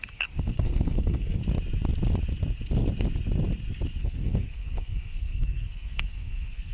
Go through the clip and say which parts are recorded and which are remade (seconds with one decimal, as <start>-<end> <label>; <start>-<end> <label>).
0.0-1.4 remade; 1.4-4.0 recorded; 4.0-6.7 remade